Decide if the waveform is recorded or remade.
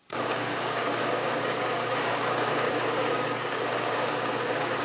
remade